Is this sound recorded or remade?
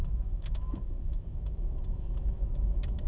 remade